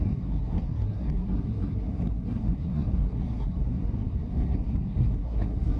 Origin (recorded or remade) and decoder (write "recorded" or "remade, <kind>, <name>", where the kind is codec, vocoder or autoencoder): remade, codec, SNAC